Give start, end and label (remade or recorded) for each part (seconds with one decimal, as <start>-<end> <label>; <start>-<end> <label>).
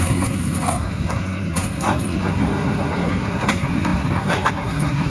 0.0-5.1 remade